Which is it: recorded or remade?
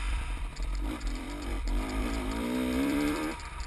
remade